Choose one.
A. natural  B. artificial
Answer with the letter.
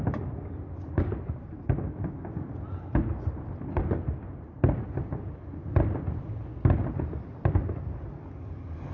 A